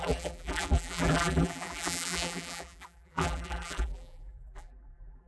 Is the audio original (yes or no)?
no